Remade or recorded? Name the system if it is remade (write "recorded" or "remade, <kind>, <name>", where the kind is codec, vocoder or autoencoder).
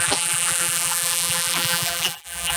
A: remade, vocoder, BigVGAN v2